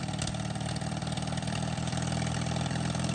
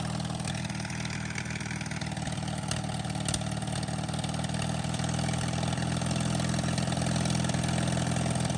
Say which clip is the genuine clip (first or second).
second